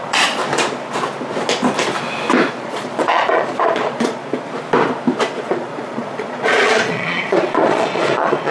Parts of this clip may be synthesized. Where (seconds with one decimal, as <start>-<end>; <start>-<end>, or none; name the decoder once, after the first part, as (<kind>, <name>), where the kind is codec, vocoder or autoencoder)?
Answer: 0.0-0.4 (vocoder, Vocos); 2.5-4.2; 5.4-8.5